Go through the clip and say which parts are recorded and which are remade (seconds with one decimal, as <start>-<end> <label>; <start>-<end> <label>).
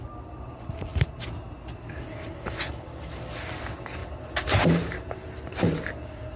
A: 0.0-0.9 recorded; 0.9-1.5 remade; 1.5-4.0 recorded; 4.0-5.8 remade; 5.8-6.4 recorded